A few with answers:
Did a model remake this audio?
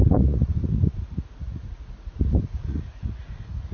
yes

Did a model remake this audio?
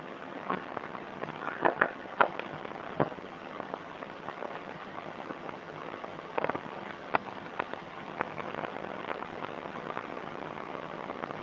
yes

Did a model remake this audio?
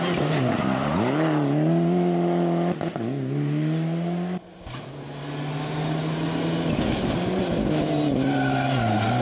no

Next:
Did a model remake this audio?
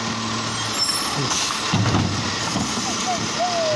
no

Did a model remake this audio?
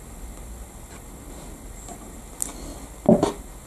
no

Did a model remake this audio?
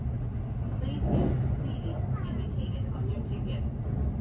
no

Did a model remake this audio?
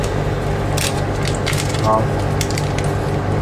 no